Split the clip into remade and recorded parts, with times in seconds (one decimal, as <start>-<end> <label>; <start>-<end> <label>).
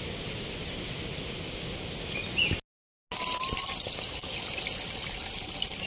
0.0-5.9 recorded